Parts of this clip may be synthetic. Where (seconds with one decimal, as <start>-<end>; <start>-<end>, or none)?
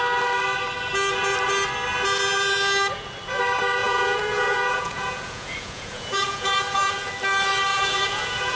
3.8-7.1; 7.7-8.6